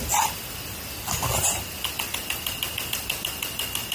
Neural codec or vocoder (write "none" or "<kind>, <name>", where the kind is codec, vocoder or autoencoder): none